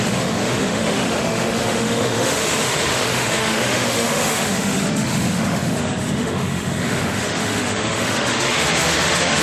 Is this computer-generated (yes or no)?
yes